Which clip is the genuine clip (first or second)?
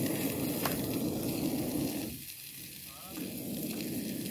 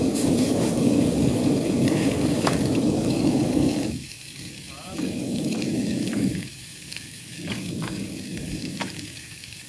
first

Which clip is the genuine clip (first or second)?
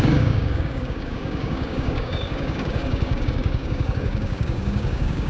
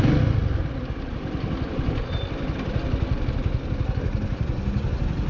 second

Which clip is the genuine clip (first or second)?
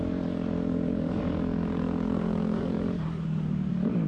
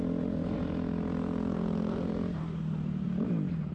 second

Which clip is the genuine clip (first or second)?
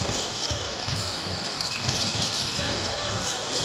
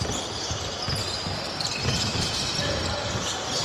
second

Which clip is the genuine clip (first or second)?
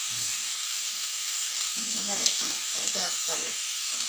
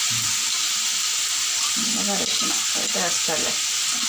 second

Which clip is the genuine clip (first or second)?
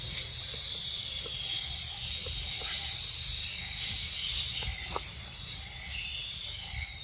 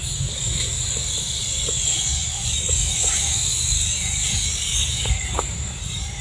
first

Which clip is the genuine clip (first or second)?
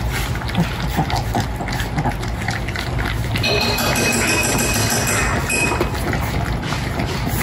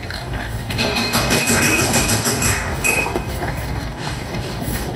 first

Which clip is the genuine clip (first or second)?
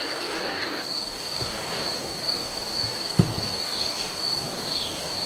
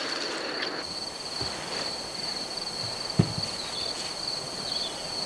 second